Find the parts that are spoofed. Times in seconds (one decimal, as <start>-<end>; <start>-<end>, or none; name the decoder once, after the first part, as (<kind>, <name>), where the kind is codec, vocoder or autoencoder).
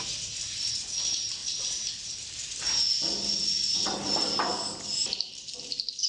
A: 1.4-2.9 (vocoder, BigVGAN v2); 4.5-5.4